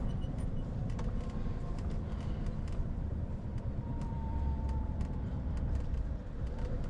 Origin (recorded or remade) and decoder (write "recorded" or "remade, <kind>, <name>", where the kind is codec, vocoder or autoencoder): remade, vocoder, BigVGAN v2